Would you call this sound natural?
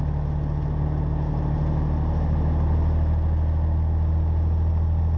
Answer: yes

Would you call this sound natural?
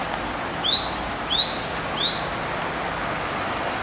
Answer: yes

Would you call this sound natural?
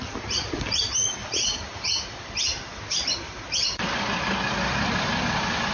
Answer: yes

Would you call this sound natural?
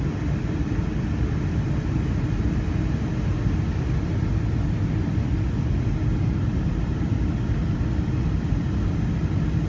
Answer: yes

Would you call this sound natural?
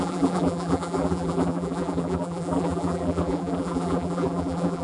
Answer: no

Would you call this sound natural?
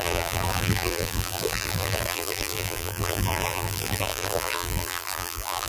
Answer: no